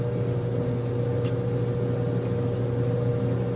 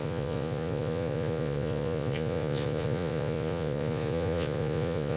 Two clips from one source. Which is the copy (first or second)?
second